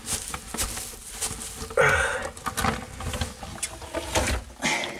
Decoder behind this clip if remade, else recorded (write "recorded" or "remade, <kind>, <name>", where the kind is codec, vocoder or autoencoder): recorded